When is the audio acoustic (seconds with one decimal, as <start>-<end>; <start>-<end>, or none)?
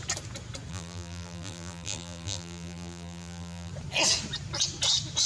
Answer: 0.0-0.7; 3.7-5.3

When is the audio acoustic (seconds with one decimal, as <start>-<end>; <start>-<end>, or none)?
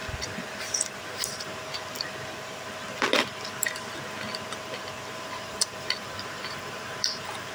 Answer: 0.0-1.1; 1.5-5.2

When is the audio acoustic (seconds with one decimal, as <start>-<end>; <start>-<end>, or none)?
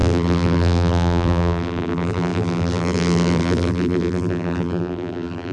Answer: none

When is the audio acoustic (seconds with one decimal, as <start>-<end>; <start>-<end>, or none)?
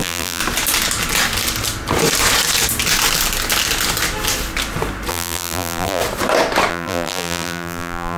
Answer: 0.4-5.1; 6.0-6.7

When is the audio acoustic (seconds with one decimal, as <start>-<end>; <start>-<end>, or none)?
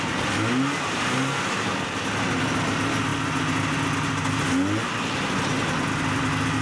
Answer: 0.0-6.6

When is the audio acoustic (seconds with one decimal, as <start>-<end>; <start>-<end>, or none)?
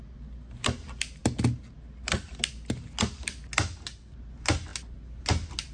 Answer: 0.0-5.7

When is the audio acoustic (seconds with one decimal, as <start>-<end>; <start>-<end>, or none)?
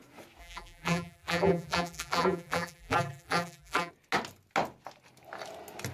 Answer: 0.0-0.4; 3.9-5.9